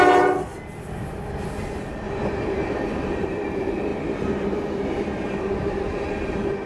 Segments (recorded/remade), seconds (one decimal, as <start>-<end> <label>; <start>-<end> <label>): 0.0-0.5 remade; 0.5-2.2 recorded; 2.2-3.9 remade; 3.9-5.3 recorded; 5.3-6.7 remade